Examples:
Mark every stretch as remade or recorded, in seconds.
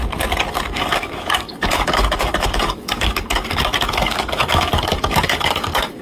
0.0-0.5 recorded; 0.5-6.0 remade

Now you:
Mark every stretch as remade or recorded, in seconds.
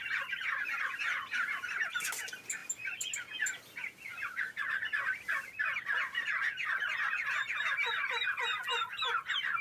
0.0-9.6 recorded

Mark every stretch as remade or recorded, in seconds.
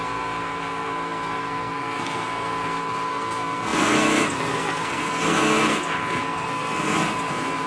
0.0-7.7 remade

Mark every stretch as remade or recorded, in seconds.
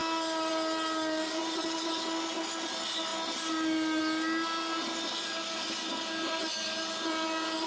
0.0-7.7 recorded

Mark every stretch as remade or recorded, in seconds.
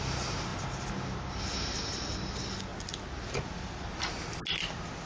0.0-5.1 recorded